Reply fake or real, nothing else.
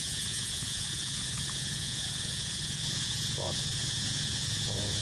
fake